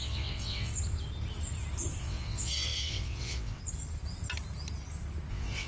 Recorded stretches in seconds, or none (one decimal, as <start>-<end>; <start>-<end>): 0.7-2.0; 3.6-5.3